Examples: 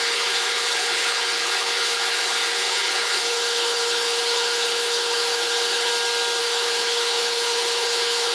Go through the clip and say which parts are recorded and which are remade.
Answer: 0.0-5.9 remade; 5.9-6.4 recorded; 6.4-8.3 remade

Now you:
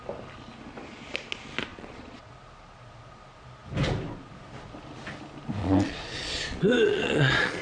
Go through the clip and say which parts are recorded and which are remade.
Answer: 0.0-1.7 recorded; 1.7-2.3 remade; 2.3-5.6 recorded; 5.6-7.6 remade

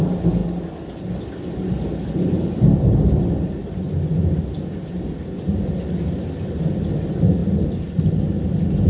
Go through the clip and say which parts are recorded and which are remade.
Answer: 0.0-8.9 recorded

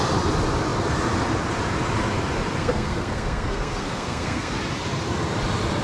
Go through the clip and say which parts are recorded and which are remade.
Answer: 0.0-2.6 recorded; 2.6-4.6 remade; 4.6-5.8 recorded

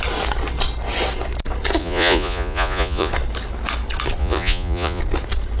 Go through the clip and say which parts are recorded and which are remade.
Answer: 0.0-1.8 recorded; 1.8-3.1 remade; 3.1-4.2 recorded; 4.2-5.0 remade; 5.0-5.6 recorded

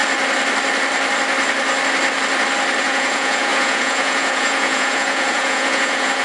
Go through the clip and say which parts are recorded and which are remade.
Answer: 0.0-2.8 recorded; 2.8-6.2 remade